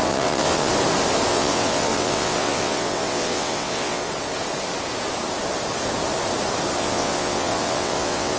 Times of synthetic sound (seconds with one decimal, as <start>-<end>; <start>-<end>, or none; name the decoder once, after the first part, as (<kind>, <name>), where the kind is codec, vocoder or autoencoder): 0.0-0.7 (vocoder, WaveNeXt); 1.3-4.1; 6.8-8.4